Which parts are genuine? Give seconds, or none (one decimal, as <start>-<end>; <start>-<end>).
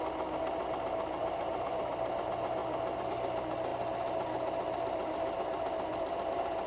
0.0-1.2; 1.8-6.7